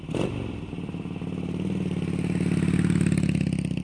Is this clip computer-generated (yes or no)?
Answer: no